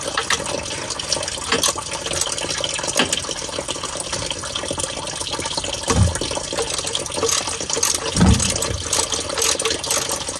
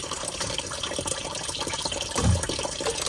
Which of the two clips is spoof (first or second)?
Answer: second